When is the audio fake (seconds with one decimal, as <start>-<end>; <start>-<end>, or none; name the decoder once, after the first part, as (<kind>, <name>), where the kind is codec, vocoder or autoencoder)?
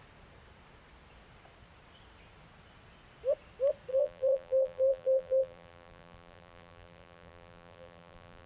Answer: 3.9-8.5 (vocoder, BigVGAN v2)